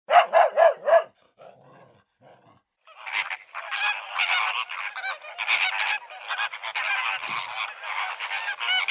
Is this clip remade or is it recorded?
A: recorded